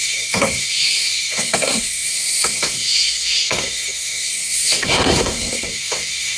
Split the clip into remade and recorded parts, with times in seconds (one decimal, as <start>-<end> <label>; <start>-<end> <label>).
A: 0.0-6.4 remade